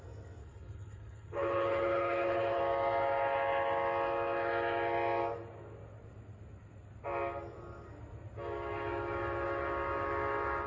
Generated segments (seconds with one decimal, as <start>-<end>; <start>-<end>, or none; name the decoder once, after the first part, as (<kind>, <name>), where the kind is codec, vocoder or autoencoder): 0.4-2.6 (codec, HILCodec)